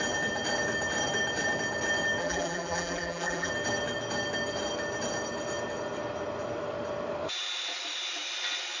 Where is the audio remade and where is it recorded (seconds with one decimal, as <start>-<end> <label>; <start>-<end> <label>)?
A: 0.0-2.2 recorded; 2.2-3.5 remade; 3.5-8.8 recorded